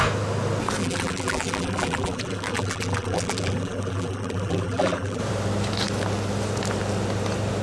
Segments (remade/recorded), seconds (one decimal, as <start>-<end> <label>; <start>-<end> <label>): 0.0-0.8 recorded; 0.8-5.2 remade; 5.2-7.6 recorded